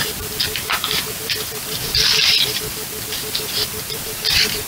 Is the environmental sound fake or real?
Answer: fake